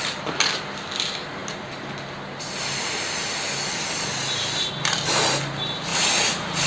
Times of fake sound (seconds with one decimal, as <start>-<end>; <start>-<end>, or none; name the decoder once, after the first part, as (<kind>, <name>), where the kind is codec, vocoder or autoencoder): 5.9-6.7 (vocoder, Vocos)